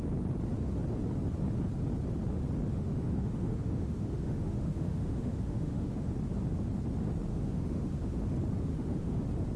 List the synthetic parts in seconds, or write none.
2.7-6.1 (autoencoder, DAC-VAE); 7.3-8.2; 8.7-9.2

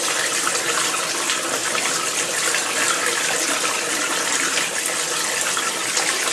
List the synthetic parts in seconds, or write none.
none

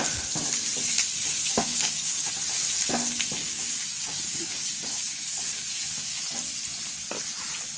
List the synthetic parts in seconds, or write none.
1.4-2.3 (codec, DAC); 3.4-6.2

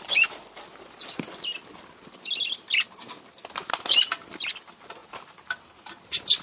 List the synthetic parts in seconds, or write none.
0.0-0.7 (vocoder, BigVGAN v2); 4.5-6.4

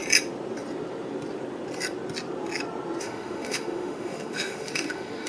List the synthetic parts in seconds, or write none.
3.0-5.3 (autoencoder, DAC-VAE)

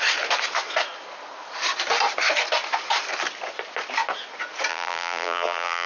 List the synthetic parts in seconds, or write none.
4.7-5.9 (vocoder, BigVGAN v2)